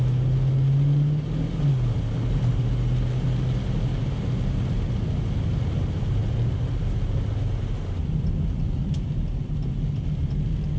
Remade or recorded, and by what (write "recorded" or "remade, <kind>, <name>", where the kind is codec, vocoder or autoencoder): recorded